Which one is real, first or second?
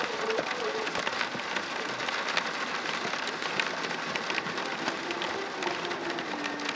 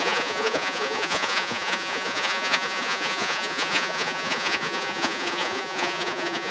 first